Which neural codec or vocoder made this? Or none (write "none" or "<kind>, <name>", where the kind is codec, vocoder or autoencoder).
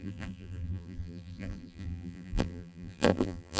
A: vocoder, BigVGAN v2